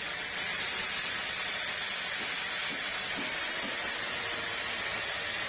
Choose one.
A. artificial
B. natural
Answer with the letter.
B